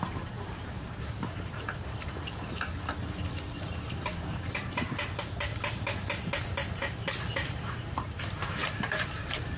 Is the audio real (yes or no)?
no